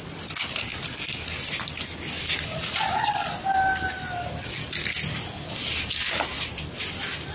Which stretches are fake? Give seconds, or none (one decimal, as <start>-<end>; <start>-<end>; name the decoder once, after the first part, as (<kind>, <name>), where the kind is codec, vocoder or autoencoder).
none